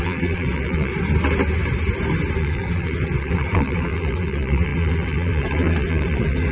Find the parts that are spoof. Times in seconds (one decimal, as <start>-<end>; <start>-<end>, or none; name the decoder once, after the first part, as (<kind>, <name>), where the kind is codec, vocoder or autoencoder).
0.0-0.9 (vocoder, WaveNeXt); 2.4-6.5